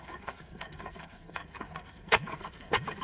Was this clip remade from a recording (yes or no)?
yes